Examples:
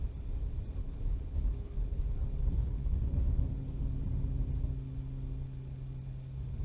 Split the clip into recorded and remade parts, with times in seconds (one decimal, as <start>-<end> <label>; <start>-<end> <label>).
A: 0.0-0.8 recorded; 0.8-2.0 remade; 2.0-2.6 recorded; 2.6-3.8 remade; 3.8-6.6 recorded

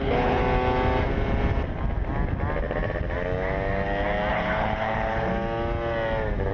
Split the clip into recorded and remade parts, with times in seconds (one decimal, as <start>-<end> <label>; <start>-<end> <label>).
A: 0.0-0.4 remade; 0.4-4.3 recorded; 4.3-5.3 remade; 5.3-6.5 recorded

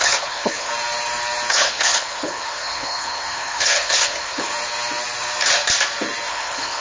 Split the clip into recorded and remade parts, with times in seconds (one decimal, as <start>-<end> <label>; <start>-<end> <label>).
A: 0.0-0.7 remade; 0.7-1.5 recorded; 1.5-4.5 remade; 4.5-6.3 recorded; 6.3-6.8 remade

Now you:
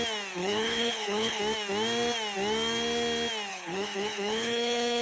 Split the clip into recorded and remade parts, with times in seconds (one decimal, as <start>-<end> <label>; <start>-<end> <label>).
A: 0.0-0.4 recorded; 0.4-1.4 remade; 1.4-3.5 recorded; 3.5-5.0 remade

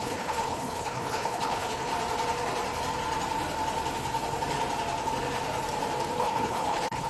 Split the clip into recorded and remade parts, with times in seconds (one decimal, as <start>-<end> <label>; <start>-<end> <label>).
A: 0.0-1.9 remade; 1.9-6.2 recorded; 6.2-7.1 remade

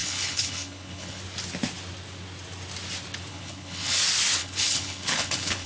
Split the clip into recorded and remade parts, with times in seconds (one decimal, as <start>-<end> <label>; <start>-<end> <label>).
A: 0.0-1.2 remade; 1.2-3.3 recorded; 3.3-4.0 remade; 4.0-4.4 recorded; 4.4-5.7 remade

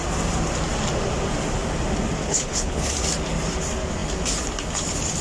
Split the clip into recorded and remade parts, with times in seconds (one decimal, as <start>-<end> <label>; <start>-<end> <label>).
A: 0.0-2.2 recorded; 2.2-2.9 remade; 2.9-5.2 recorded

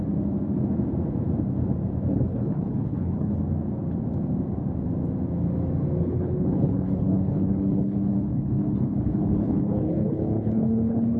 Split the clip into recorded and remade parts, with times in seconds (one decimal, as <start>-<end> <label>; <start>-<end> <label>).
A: 0.0-2.1 recorded; 2.1-3.4 remade; 3.4-6.0 recorded; 6.0-11.2 remade